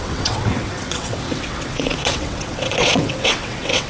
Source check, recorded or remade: remade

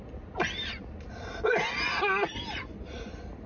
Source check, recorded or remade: recorded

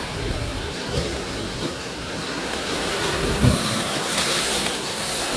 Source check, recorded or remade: remade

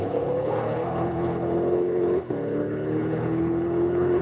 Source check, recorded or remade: remade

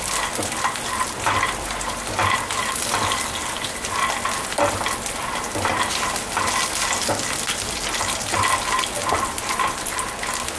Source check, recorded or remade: recorded